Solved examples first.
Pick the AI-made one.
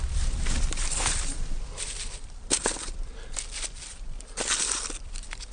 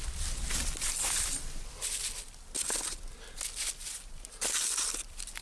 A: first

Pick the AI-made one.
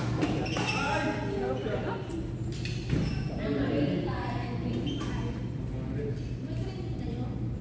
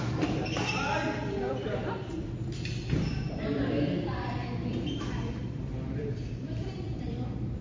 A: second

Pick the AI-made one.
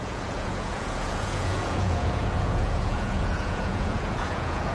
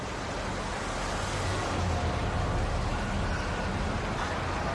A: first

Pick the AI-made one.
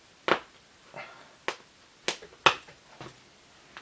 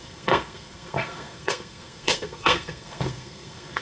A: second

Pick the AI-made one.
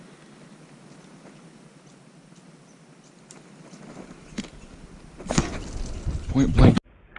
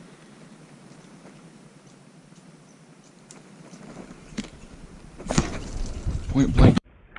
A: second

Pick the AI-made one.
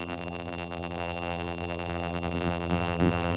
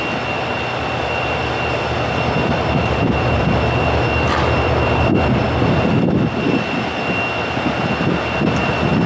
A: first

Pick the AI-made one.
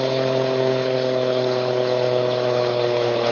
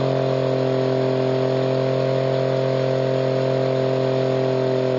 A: first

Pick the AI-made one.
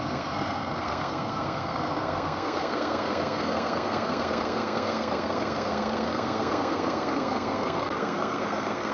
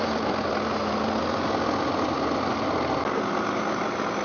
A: first